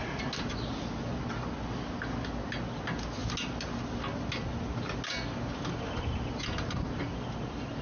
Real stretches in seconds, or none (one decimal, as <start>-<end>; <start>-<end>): 0.0-7.8